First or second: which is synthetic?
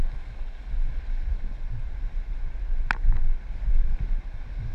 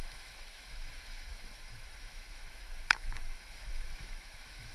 second